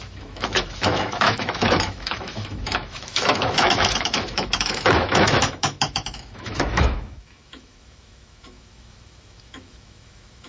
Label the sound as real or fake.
fake